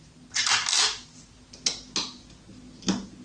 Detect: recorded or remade recorded